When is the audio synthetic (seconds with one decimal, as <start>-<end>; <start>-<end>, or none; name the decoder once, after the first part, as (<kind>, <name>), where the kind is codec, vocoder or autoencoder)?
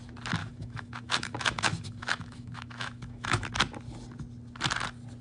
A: 0.4-3.5 (autoencoder, DAC-VAE)